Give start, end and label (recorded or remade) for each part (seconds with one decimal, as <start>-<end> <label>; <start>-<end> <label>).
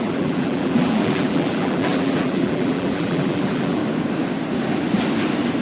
0.0-3.8 remade; 3.8-5.6 recorded